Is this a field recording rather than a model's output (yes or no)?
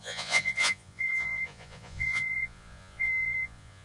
no